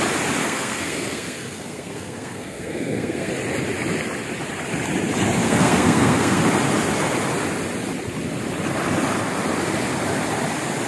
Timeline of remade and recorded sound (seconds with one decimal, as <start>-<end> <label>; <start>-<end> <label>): 0.0-0.4 recorded; 0.4-3.3 remade; 3.3-5.4 recorded; 5.4-6.4 remade; 6.4-10.9 recorded